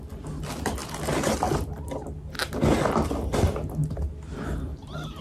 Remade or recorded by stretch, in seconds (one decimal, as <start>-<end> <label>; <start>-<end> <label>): 0.0-5.2 recorded